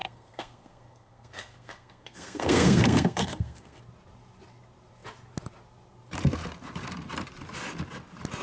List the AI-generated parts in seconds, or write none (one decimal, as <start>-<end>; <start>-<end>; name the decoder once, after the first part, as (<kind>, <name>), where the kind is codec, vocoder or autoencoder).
0.0-3.8 (codec, SNAC)